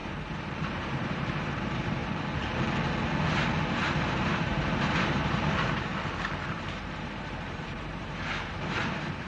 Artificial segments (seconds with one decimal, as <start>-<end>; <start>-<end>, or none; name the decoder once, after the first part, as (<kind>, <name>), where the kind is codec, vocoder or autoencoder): 0.6-2.0 (vocoder, BigVGAN v2); 3.6-5.9; 6.5-9.3